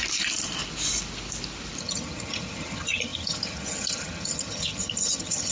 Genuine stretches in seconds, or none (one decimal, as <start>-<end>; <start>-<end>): 0.0-1.8

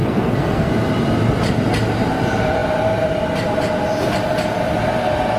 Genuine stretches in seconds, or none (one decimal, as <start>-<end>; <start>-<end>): 0.7-5.4

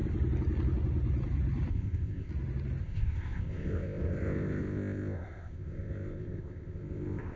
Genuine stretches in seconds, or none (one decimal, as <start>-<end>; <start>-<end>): 0.0-1.7; 2.3-2.8